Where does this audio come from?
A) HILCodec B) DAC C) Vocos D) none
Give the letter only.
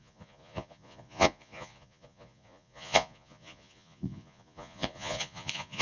C